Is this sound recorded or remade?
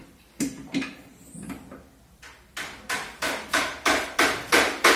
remade